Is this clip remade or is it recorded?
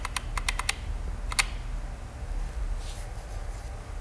recorded